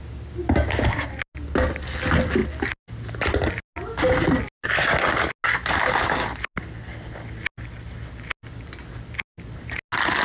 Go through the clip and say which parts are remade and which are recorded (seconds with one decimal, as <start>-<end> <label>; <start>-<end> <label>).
0.0-10.2 recorded